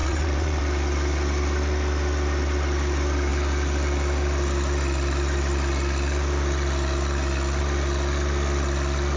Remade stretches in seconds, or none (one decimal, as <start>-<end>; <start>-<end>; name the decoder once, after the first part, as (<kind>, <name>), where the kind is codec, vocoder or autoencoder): 0.0-0.6 (vocoder, WaveNeXt)